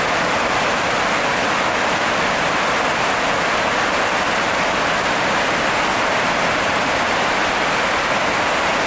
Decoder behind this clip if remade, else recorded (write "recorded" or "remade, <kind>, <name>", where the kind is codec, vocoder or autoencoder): recorded